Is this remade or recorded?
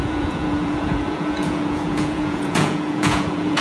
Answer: remade